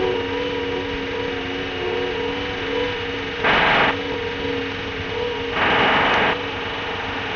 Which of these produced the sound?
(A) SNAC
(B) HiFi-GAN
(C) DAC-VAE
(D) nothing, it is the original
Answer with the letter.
D